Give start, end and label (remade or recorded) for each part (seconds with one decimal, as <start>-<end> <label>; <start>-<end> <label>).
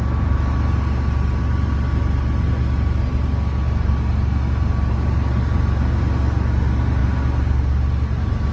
0.0-8.5 recorded